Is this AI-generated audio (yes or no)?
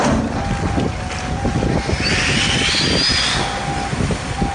no